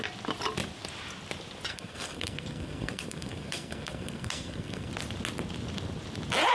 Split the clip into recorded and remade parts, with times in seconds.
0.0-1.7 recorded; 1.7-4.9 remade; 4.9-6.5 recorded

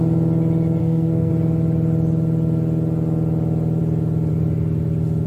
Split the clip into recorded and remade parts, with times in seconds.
0.0-0.8 recorded; 0.8-1.3 remade; 1.3-5.3 recorded